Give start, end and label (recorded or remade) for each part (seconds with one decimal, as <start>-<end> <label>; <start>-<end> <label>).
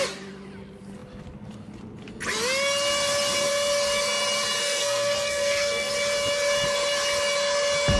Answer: 0.0-4.6 recorded; 4.6-5.9 remade; 5.9-8.0 recorded